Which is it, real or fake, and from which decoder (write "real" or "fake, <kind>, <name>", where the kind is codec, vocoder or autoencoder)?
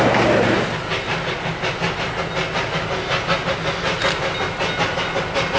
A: real